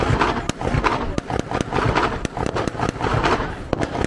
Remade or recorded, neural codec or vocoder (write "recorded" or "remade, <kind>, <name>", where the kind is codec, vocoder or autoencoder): recorded